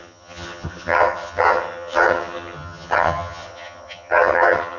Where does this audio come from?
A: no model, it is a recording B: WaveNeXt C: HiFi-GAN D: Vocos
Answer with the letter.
C